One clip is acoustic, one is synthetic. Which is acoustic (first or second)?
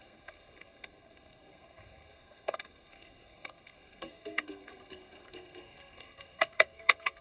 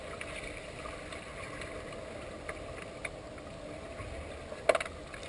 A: second